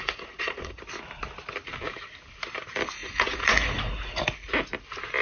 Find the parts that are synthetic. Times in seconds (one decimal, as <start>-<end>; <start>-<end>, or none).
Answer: 0.0-0.8; 3.0-4.2